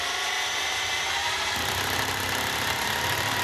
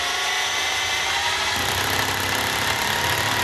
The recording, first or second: second